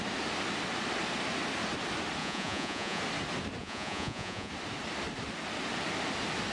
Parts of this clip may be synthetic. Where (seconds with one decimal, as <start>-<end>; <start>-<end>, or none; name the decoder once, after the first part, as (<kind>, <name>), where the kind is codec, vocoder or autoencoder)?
2.2-3.0 (vocoder, Vocos); 3.6-4.5